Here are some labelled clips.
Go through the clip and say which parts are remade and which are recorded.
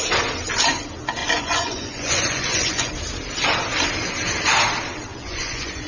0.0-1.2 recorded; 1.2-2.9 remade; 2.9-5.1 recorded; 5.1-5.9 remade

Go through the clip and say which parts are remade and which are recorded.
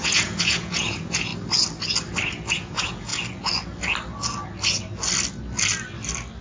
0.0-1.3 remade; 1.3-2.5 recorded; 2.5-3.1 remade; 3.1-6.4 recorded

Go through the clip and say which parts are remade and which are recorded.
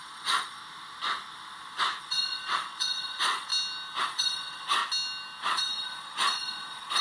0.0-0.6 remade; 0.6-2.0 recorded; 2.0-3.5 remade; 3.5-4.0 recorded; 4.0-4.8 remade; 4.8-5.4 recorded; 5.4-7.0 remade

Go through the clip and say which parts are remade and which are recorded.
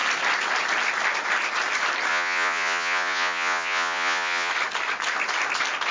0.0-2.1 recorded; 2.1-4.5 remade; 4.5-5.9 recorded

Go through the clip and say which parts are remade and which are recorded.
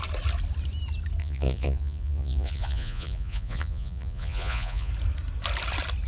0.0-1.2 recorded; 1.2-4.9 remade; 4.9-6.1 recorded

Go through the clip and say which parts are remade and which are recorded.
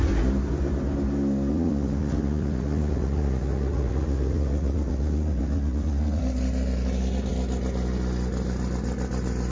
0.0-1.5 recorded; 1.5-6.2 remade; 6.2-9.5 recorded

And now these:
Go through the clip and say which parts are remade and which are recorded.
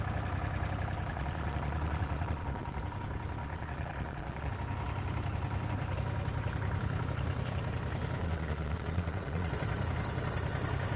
0.0-1.1 recorded; 1.1-2.8 remade; 2.8-3.4 recorded; 3.4-4.5 remade; 4.5-8.2 recorded; 8.2-9.5 remade; 9.5-11.0 recorded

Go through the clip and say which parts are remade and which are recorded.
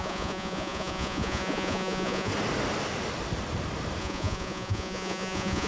0.0-2.3 remade; 2.3-4.0 recorded; 4.0-5.7 remade